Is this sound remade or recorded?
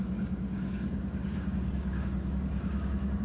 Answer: remade